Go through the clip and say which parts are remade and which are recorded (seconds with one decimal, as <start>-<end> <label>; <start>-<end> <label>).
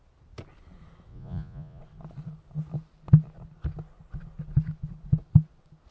0.0-1.1 recorded; 1.1-1.8 remade; 1.8-5.9 recorded